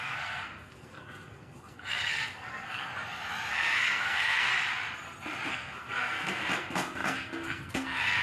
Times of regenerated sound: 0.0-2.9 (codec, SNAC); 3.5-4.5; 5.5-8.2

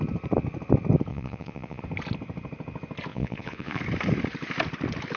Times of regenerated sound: 1.1-1.8 (vocoder, Vocos); 3.1-3.8

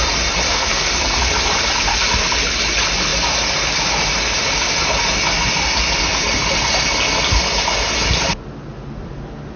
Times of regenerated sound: 0.5-1.2 (codec, SNAC)

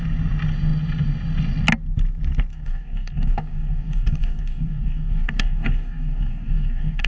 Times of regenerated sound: 2.5-7.1 (codec, DAC)

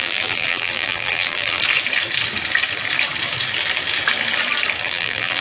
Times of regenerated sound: 0.0-1.6 (vocoder, BigVGAN v2); 4.8-5.4

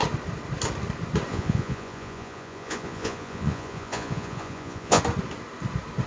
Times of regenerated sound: 1.3-5.0 (vocoder, Vocos)